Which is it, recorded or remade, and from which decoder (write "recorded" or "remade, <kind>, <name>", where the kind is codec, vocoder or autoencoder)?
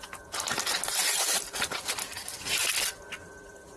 recorded